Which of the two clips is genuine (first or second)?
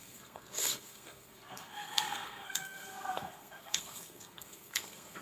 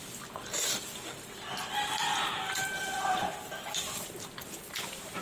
second